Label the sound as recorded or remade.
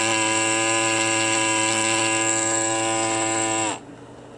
recorded